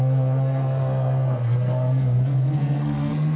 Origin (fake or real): fake